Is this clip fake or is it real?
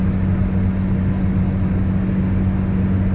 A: real